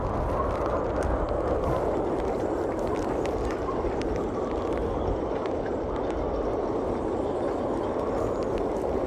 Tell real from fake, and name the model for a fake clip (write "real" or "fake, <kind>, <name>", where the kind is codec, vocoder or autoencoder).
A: real